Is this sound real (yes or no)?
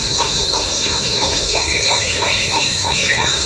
no